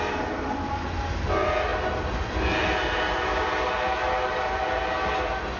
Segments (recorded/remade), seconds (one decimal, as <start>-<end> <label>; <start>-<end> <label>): 0.0-5.6 recorded